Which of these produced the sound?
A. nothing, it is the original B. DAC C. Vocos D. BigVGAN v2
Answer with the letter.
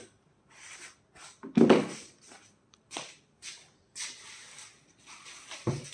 A